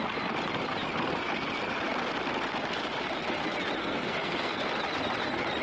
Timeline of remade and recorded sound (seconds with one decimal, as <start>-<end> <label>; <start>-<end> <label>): 0.0-3.8 recorded; 3.8-4.6 remade; 4.6-5.6 recorded